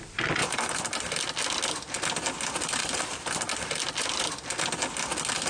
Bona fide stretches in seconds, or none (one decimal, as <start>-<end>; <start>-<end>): 0.0-0.4; 1.1-2.8; 4.2-5.5